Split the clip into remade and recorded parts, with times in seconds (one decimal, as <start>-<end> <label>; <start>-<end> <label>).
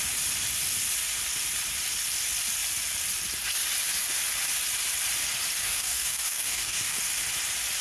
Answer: 0.0-5.6 recorded; 5.6-7.0 remade; 7.0-7.8 recorded